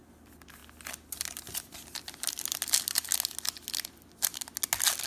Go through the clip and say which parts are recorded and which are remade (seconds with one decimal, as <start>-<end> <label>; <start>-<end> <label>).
0.0-5.1 recorded